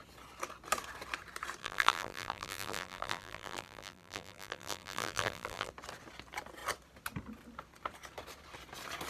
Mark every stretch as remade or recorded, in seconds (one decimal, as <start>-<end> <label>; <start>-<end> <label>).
0.0-1.6 recorded; 1.6-5.7 remade; 5.7-9.1 recorded